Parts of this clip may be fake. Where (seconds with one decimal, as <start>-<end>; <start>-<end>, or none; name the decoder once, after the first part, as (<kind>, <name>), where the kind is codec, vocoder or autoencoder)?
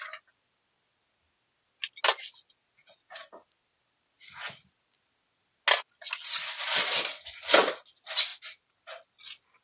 none